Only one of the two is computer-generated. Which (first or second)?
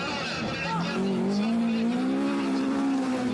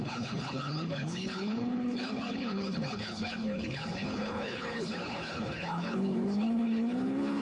second